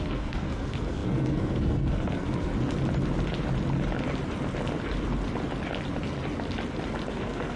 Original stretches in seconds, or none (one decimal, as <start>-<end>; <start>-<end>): 2.5-7.1